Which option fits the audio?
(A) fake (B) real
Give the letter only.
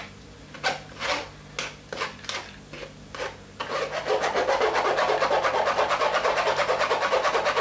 B